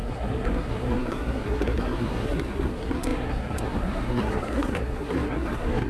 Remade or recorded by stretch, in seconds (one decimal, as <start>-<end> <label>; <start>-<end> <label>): 0.0-5.9 remade